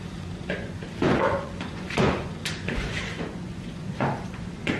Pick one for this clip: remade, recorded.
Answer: remade